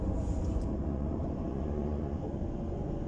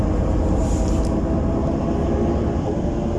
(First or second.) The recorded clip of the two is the second